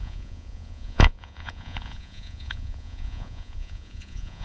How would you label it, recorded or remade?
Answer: remade